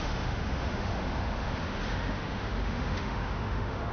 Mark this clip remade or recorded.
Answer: remade